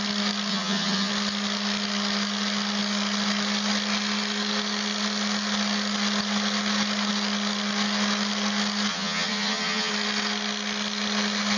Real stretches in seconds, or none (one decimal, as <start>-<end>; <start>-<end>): 0.0-0.5; 1.1-8.9; 9.9-11.6